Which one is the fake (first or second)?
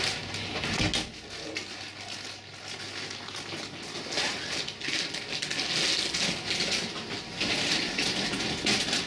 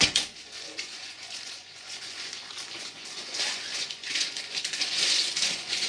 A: second